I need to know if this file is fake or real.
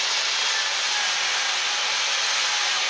real